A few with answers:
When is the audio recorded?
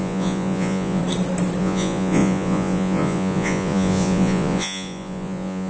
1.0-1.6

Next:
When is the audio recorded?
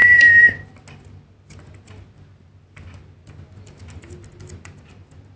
0.0-5.4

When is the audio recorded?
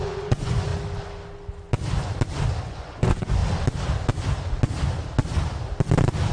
0.7-2.6; 3.4-6.3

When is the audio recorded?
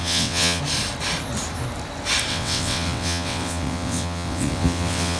0.6-2.3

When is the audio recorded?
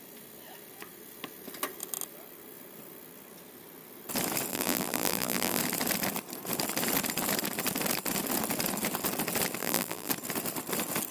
0.0-4.5; 5.6-9.6; 10.1-11.1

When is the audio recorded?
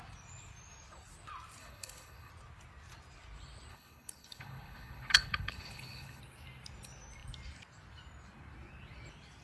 0.0-1.6; 2.3-3.7; 6.2-9.4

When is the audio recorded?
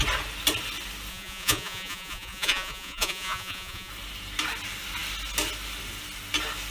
0.0-1.1; 3.9-6.7